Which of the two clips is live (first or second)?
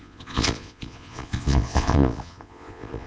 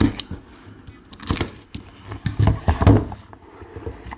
second